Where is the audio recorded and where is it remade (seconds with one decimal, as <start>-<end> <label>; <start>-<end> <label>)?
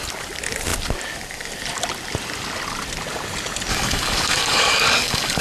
0.0-3.7 recorded; 3.7-5.4 remade